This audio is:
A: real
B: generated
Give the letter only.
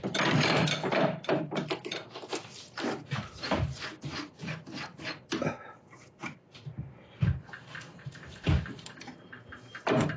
B